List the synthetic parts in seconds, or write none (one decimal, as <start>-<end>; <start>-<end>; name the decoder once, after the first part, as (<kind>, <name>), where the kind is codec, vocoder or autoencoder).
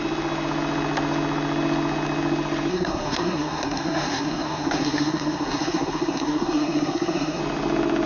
2.7-7.4 (codec, SNAC)